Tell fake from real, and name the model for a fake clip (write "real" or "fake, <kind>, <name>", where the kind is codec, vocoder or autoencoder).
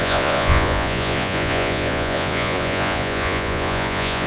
fake, vocoder, Vocos